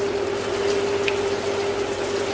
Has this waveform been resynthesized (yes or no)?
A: no